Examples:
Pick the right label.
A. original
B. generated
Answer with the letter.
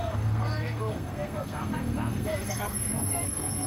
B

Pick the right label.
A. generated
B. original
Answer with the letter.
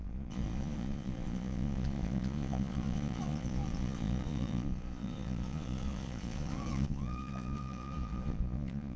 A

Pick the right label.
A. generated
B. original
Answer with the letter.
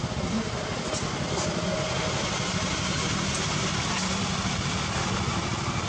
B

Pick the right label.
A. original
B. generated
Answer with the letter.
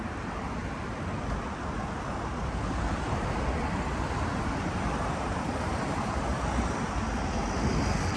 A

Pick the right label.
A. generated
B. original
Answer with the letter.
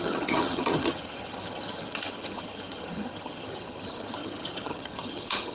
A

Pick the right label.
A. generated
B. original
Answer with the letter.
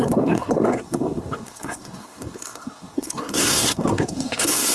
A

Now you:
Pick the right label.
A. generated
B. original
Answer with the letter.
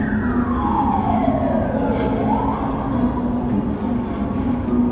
B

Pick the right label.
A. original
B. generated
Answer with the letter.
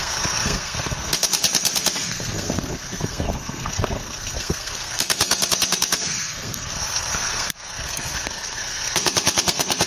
B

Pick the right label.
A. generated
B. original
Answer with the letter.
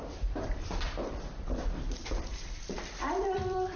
A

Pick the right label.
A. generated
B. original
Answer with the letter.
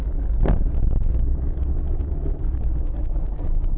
B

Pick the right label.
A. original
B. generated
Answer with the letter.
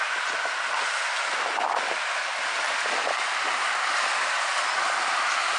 A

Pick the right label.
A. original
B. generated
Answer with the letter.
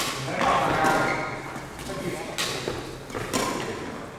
A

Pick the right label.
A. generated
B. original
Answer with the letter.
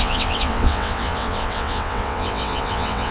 A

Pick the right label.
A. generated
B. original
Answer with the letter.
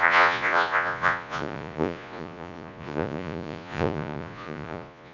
A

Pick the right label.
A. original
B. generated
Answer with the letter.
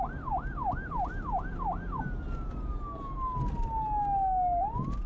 A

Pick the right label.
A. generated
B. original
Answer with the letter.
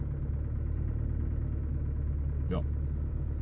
B